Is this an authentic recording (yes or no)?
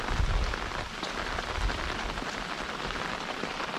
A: no